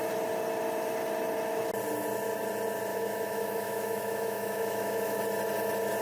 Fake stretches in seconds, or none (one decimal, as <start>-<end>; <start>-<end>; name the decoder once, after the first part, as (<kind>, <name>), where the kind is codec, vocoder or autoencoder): 2.9-5.2 (autoencoder, DAC-VAE)